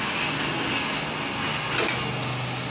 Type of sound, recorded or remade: recorded